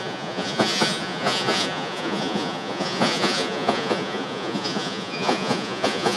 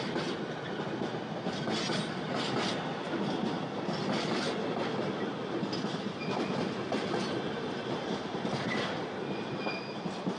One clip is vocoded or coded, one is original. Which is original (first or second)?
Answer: second